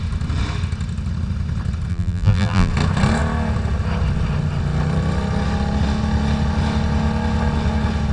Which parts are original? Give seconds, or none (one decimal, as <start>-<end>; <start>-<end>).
0.0-1.9; 2.7-8.1